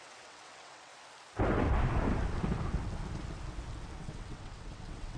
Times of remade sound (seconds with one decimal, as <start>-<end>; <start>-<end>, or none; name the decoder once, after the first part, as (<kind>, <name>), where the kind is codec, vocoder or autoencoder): 0.0-0.9 (vocoder, WaveNeXt); 4.0-5.2